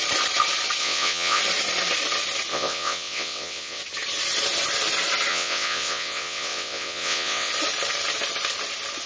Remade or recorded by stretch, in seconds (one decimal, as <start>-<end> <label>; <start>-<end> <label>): 0.0-0.8 recorded; 0.8-1.4 remade; 1.4-2.5 recorded; 2.5-3.8 remade; 3.8-5.3 recorded; 5.3-7.5 remade; 7.5-9.1 recorded